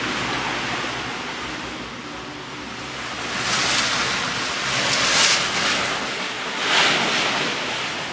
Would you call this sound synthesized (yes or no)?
no